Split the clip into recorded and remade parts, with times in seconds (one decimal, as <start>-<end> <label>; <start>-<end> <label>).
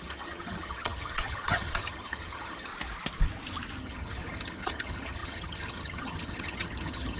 0.0-2.7 remade; 2.7-3.8 recorded; 3.8-7.2 remade